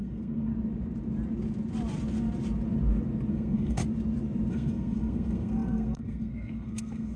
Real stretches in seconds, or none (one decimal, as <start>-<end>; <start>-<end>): 0.5-3.3; 3.8-4.5